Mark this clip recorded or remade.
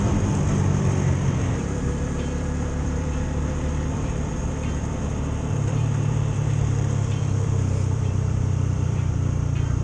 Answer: remade